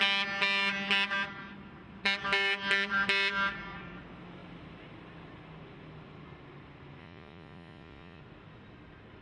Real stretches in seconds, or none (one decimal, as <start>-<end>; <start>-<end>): 0.0-7.0; 8.2-9.2